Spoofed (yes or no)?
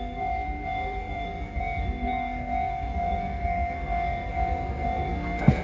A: yes